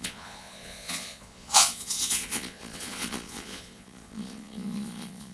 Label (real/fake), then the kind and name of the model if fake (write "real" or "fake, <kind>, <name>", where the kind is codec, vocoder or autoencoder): fake, vocoder, Vocos